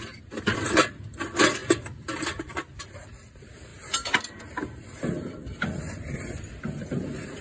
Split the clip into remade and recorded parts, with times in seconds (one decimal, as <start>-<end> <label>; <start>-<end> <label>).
0.0-7.4 remade